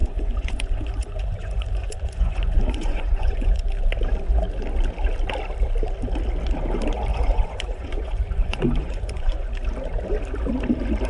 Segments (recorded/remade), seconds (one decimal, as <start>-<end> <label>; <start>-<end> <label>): 0.0-3.6 remade; 3.6-7.1 recorded; 7.1-9.5 remade; 9.5-11.1 recorded